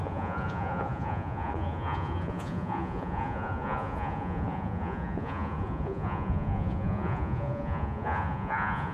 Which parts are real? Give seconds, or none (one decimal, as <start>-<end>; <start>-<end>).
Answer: none